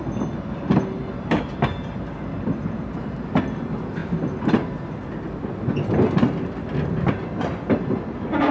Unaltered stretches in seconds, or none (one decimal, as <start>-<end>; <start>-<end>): 0.0-8.5